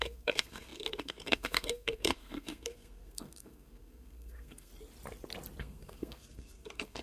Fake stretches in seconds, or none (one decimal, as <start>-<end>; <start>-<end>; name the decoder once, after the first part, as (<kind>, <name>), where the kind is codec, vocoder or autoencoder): 0.0-4.7 (codec, SNAC); 5.6-7.0